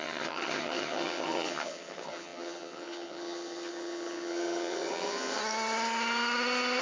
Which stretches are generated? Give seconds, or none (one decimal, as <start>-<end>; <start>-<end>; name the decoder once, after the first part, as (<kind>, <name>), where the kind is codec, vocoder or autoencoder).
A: 0.0-5.4 (vocoder, HiFi-GAN)